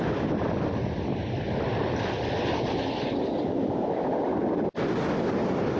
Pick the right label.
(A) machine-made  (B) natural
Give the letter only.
B